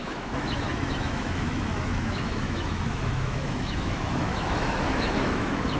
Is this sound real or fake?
fake